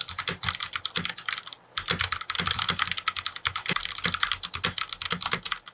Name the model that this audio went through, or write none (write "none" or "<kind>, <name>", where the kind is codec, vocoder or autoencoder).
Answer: none